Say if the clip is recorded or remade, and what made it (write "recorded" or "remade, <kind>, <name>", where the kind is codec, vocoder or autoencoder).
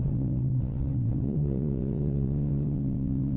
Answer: remade, vocoder, WaveNeXt